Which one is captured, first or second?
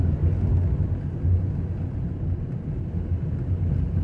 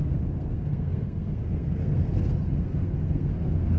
first